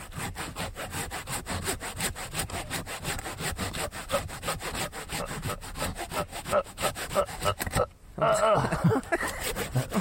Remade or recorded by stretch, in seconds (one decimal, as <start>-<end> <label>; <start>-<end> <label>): 0.0-6.3 recorded; 6.3-7.2 remade; 7.2-10.0 recorded